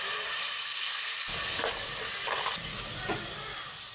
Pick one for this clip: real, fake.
real